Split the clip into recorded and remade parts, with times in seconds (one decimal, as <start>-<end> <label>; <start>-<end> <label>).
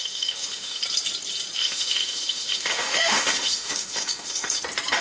0.0-0.8 remade; 0.8-1.6 recorded; 1.6-4.6 remade; 4.6-5.0 recorded